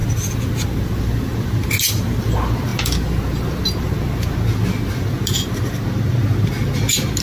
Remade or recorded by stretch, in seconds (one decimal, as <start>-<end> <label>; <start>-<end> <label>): 0.0-7.2 recorded

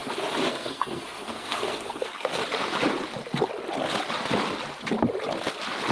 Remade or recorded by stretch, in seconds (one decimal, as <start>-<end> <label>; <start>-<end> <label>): 0.0-0.5 recorded; 0.5-2.4 remade; 2.4-5.9 recorded